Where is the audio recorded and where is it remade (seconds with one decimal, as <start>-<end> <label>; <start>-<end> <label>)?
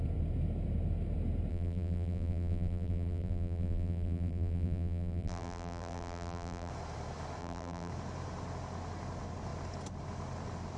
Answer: 0.0-1.5 recorded; 1.5-6.7 remade; 6.7-7.4 recorded; 7.4-7.9 remade; 7.9-10.8 recorded